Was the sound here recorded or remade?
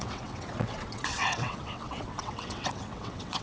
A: remade